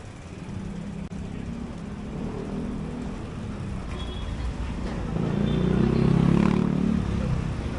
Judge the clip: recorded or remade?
recorded